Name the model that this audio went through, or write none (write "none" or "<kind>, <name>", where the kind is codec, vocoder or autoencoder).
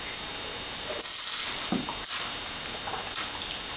none